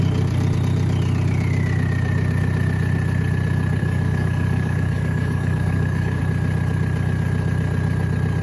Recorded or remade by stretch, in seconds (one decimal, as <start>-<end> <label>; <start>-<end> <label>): 0.0-3.8 recorded; 3.8-6.2 remade; 6.2-8.4 recorded